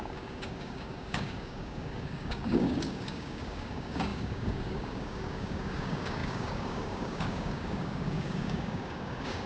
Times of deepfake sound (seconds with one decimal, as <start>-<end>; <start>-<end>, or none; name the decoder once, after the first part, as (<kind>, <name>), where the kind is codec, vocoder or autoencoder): 0.0-9.5 (codec, DAC)

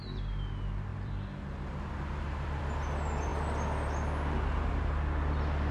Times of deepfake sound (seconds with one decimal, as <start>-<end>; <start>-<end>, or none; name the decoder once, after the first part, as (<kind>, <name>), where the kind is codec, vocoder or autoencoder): 0.9-2.6 (vocoder, BigVGAN v2)

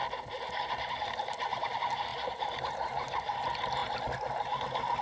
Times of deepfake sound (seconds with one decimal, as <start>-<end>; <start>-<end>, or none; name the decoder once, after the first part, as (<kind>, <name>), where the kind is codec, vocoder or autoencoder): none

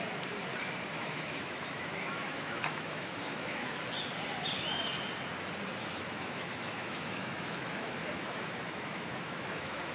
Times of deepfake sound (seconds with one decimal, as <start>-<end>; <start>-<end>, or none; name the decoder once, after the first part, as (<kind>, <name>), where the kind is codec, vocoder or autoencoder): 0.9-3.8 (autoencoder, DAC-VAE); 5.8-9.9